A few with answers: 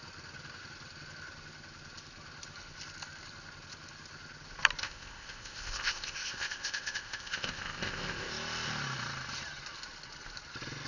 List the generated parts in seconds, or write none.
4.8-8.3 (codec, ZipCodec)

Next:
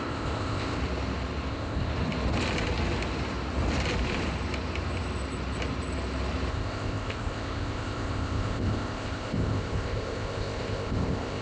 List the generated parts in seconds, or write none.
0.0-0.8 (codec, ZipCodec); 1.5-1.9; 6.5-11.4

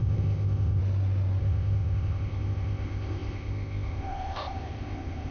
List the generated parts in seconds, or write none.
0.0-0.8 (codec, ZipCodec); 1.4-5.3

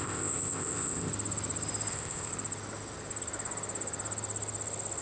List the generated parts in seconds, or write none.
0.0-1.1 (codec, ZipCodec); 1.9-2.3

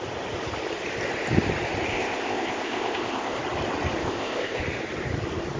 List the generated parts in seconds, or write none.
1.9-3.4 (codec, ZipCodec); 4.0-4.6

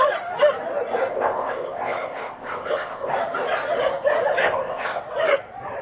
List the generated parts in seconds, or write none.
1.1-3.1 (codec, ZipCodec); 4.4-5.0

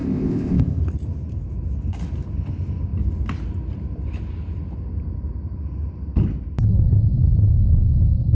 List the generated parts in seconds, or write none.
0.0-0.8 (codec, ZipCodec)